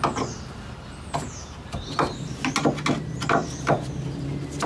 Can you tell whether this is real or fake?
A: real